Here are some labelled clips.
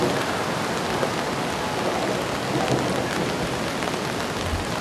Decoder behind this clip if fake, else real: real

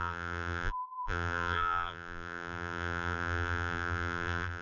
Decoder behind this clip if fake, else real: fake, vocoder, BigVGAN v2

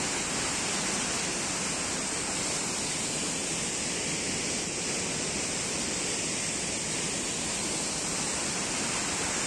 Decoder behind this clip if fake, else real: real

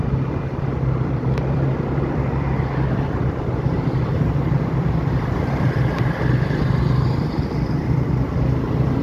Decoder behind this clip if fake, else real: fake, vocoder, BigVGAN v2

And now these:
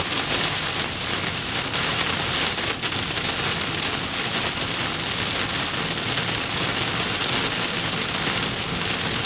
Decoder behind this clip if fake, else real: real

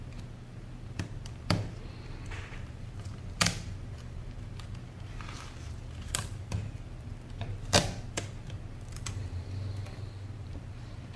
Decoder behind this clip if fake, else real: fake, vocoder, BigVGAN v2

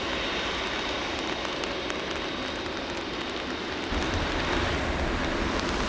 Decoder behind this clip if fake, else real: real